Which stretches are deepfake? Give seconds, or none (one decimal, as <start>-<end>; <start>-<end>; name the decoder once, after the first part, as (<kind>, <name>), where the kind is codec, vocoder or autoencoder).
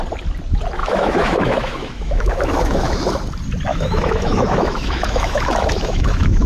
0.8-3.0 (autoencoder, DAC-VAE); 3.7-6.5